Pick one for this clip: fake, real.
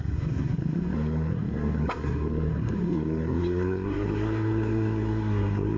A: fake